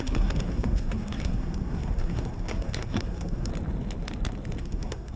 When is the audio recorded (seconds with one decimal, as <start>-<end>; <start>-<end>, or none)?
3.5-4.6